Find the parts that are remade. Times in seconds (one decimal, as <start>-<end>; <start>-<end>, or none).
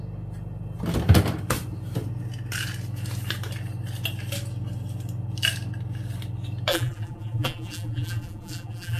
6.7-9.0